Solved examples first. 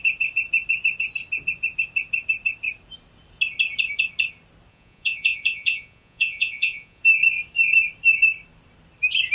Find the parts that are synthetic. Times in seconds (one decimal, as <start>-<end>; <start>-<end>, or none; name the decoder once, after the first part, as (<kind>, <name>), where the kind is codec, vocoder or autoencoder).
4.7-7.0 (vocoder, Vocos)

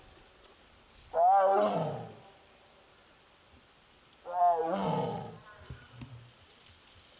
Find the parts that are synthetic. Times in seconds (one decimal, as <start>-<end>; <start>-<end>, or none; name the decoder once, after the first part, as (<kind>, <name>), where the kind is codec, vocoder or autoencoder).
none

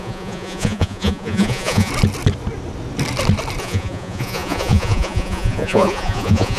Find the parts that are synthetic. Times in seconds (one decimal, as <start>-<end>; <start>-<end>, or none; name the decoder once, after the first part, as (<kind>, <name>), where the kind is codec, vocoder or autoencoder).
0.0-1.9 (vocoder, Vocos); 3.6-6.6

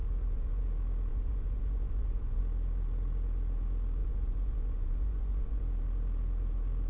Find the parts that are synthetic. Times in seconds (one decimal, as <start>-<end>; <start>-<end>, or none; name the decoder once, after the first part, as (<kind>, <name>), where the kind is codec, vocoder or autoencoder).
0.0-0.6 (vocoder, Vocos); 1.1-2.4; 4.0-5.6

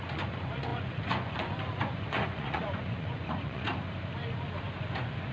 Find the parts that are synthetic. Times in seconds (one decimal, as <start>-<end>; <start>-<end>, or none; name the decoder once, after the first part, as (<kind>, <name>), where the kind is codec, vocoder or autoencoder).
0.0-3.7 (vocoder, Vocos); 4.8-5.3

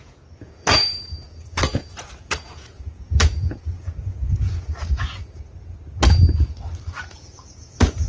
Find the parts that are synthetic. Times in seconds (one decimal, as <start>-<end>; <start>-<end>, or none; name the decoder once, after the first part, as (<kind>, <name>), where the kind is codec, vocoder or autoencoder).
0.0-5.1 (vocoder, Vocos); 7.0-8.1

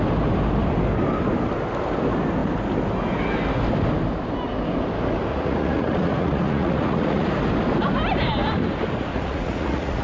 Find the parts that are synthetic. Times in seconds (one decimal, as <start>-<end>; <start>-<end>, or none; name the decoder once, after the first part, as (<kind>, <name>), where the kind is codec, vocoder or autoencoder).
5.3-7.3 (vocoder, Vocos); 9.1-10.0